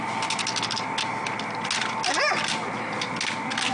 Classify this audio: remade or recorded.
recorded